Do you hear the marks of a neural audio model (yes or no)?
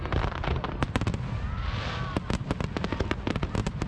no